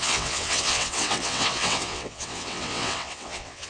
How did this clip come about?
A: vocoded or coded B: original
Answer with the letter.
A